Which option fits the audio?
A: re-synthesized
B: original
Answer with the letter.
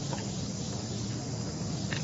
B